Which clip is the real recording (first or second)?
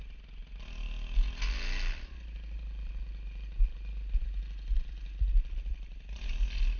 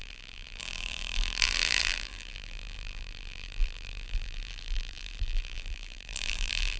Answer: first